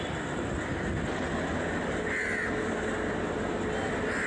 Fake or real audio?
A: real